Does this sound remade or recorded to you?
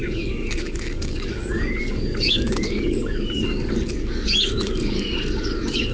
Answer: remade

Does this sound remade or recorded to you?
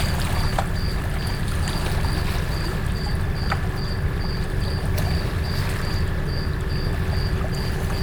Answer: recorded